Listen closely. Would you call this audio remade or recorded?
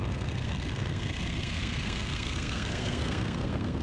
remade